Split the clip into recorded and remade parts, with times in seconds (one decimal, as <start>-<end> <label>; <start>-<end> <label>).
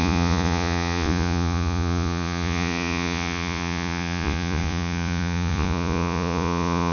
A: 0.0-6.9 remade